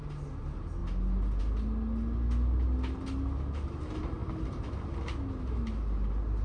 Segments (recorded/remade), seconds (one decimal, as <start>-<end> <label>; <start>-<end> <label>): 0.0-6.4 recorded